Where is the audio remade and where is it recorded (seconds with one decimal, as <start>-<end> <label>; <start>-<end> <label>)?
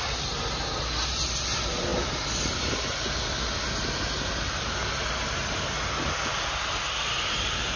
0.0-7.8 recorded